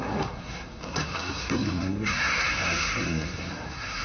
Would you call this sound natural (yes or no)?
no